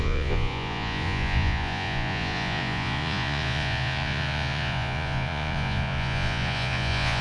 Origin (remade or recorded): remade